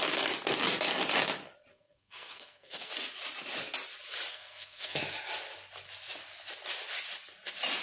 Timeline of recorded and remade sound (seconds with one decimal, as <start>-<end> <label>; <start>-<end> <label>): 0.0-1.7 recorded; 1.7-2.9 remade; 2.9-4.3 recorded; 4.3-5.0 remade; 5.0-7.8 recorded

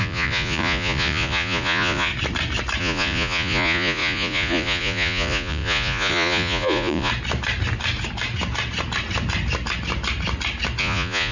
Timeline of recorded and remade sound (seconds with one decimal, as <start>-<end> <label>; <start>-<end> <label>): 0.0-2.1 remade; 2.1-2.8 recorded; 2.8-7.1 remade; 7.1-10.8 recorded; 10.8-11.3 remade

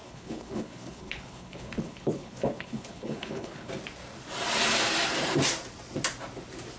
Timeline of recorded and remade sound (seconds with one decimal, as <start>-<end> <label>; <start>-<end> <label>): 0.0-3.7 remade; 3.7-6.8 recorded

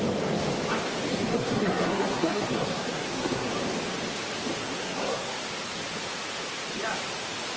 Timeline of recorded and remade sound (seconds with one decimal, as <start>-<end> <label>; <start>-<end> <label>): 0.0-1.1 recorded; 1.1-3.5 remade; 3.5-4.6 recorded; 4.6-5.4 remade; 5.4-7.6 recorded